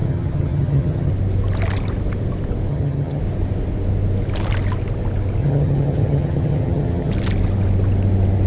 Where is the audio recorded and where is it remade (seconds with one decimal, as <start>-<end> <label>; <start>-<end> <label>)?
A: 0.0-1.1 remade; 1.1-2.7 recorded; 2.7-3.2 remade; 3.2-5.4 recorded; 5.4-7.1 remade; 7.1-8.5 recorded